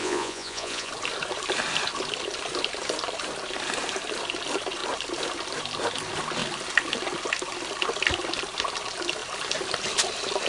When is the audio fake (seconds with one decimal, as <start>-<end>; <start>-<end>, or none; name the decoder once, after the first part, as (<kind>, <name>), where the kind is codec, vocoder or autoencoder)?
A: 0.0-0.9 (vocoder, Vocos)